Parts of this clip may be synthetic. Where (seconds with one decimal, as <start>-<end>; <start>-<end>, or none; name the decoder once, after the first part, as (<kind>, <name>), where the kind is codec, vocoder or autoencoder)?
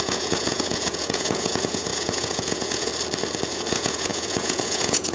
0.0-2.9 (vocoder, Vocos); 3.5-5.1